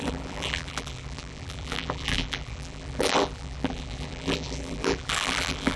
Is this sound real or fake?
fake